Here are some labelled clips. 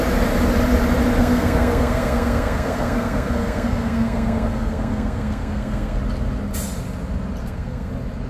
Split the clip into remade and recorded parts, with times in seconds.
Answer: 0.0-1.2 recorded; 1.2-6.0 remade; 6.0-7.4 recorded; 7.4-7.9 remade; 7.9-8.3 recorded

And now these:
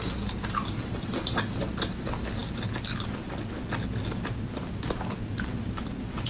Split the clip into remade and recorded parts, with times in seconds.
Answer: 0.0-6.3 recorded

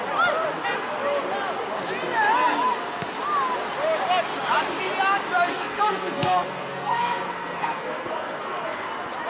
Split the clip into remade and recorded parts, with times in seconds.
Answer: 0.0-5.5 recorded; 5.5-8.9 remade; 8.9-9.3 recorded

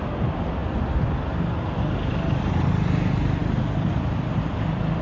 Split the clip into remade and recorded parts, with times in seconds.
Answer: 0.0-5.0 recorded